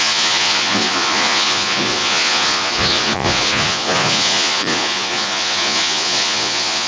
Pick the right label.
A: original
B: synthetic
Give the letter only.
B